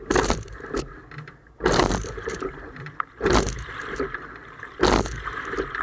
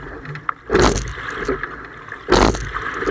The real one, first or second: second